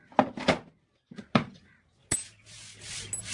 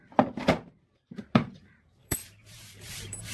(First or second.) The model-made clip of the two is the second